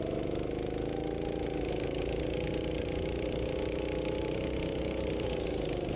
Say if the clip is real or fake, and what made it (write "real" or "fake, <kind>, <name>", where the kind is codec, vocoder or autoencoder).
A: real